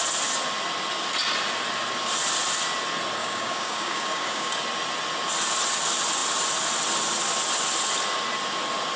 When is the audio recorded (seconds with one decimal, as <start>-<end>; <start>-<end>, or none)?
0.0-3.2; 4.5-9.0